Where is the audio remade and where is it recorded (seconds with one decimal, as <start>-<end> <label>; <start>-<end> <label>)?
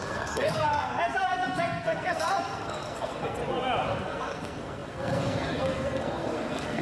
0.0-3.4 remade; 3.4-4.0 recorded; 4.0-6.8 remade